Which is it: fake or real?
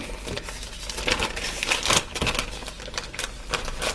real